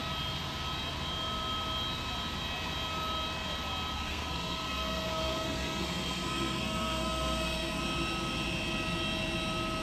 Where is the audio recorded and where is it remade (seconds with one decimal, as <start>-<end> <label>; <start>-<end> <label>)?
0.0-3.9 recorded; 3.9-7.8 remade; 7.8-9.8 recorded